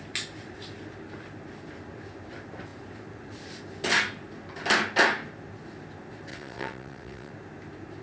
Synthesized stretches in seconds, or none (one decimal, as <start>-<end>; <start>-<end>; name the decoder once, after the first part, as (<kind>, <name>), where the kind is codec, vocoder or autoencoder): 6.3-7.3 (vocoder, WaveNeXt)